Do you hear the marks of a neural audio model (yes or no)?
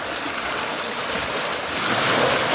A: no